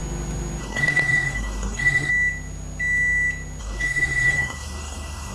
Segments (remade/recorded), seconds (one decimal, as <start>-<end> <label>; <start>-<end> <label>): 0.0-0.6 recorded; 0.6-2.1 remade; 2.1-3.6 recorded; 3.6-5.3 remade